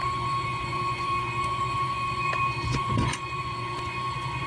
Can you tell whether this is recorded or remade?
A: remade